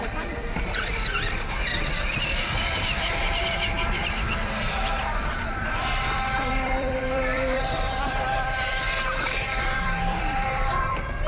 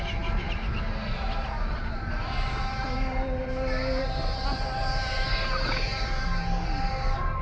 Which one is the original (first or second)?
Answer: second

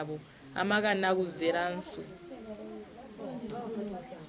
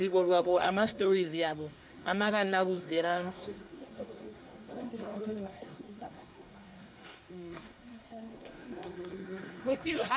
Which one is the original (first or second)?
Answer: first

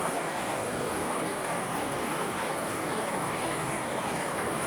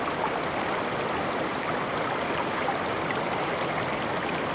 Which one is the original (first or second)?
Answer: second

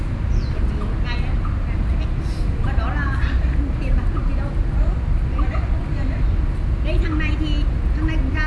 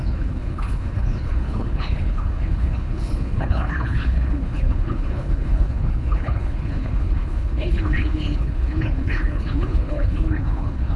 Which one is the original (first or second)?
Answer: first